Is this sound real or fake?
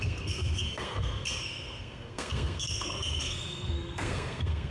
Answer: fake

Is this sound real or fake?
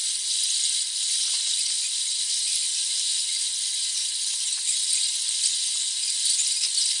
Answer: real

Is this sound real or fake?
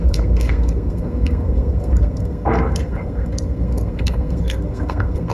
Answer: fake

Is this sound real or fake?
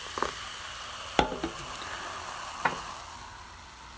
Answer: real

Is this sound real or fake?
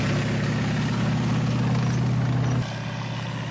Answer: real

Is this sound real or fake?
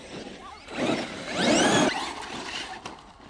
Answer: real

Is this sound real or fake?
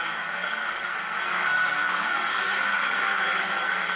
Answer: fake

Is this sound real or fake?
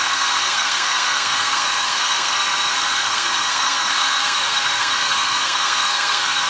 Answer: fake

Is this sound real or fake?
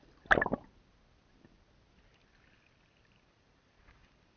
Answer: real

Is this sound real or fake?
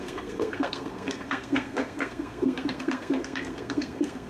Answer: fake